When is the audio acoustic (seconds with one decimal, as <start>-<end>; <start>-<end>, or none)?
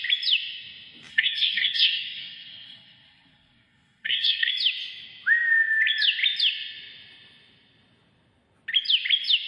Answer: 0.0-1.1; 4.5-9.5